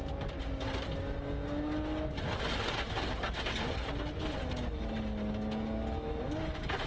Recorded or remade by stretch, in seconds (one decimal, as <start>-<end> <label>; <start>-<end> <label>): 0.0-6.9 recorded